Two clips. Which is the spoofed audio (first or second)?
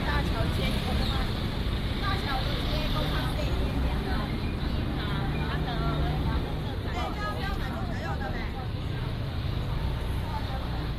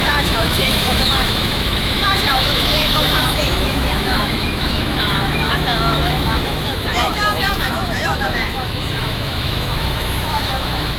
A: second